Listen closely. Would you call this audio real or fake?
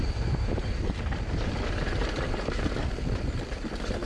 fake